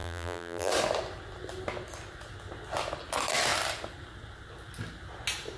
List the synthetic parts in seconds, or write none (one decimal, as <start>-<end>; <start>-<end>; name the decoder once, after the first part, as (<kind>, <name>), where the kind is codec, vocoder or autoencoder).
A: 0.0-0.7 (vocoder, BigVGAN v2)